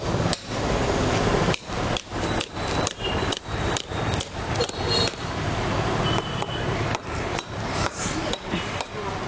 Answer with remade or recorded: remade